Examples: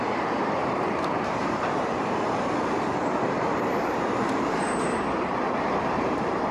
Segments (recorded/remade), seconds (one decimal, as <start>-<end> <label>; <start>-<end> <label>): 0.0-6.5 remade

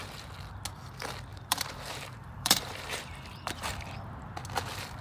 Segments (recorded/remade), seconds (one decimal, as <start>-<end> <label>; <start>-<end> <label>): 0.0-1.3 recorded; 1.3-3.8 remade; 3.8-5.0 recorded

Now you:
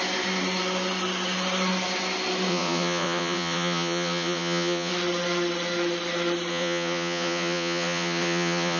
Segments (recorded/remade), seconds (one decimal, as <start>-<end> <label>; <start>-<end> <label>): 0.0-2.5 recorded; 2.5-4.9 remade; 4.9-6.5 recorded; 6.5-8.8 remade

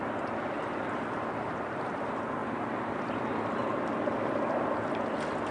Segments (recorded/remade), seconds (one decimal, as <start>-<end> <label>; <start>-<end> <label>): 0.0-5.5 recorded

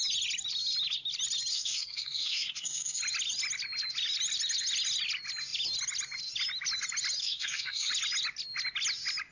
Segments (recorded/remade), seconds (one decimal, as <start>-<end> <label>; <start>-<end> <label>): 0.0-1.5 recorded; 1.5-3.0 remade; 3.0-7.2 recorded; 7.2-7.9 remade; 7.9-9.3 recorded

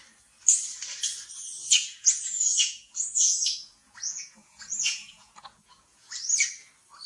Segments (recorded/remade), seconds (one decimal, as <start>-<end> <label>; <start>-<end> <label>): 0.0-1.8 recorded; 1.8-6.1 remade; 6.1-7.1 recorded

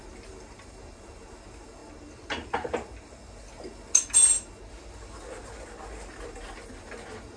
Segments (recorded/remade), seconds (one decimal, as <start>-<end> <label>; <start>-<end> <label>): 0.0-7.4 recorded